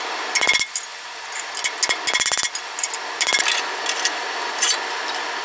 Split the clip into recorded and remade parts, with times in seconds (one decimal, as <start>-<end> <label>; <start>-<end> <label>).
0.0-5.4 recorded